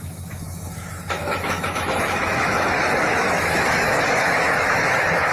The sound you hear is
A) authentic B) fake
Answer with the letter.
B